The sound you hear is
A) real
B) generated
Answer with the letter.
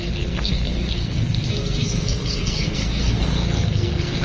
B